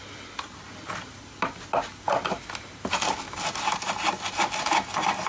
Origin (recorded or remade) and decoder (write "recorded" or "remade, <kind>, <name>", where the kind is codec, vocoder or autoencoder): recorded